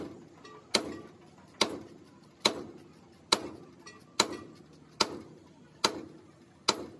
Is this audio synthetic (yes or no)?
no